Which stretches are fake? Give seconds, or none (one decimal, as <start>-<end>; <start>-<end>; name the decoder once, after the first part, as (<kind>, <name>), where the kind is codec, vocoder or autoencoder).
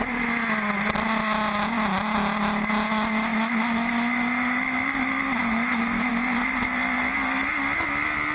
3.3-6.1 (autoencoder, DAC-VAE)